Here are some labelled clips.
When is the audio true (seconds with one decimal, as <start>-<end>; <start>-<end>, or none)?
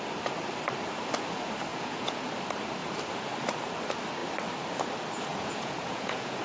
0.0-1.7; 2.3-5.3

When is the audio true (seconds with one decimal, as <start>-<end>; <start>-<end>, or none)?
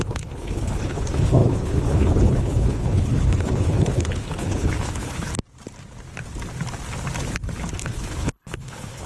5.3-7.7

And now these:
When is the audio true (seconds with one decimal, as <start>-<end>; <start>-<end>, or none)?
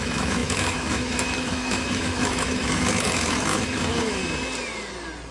4.2-5.3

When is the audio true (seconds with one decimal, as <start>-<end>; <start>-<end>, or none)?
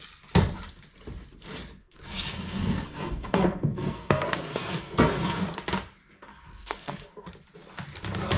0.0-1.8; 5.4-6.3; 7.3-8.4